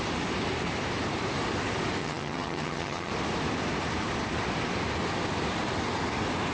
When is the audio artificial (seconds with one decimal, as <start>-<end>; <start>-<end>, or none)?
2.0-3.1